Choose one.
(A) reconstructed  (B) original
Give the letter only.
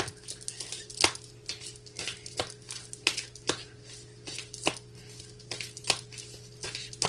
B